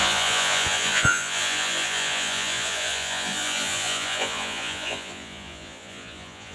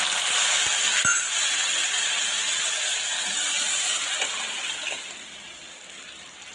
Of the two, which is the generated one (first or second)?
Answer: first